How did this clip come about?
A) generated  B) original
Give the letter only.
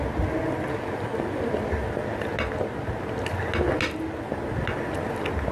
B